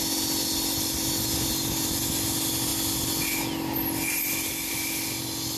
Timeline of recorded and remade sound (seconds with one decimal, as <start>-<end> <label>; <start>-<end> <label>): 0.0-5.6 recorded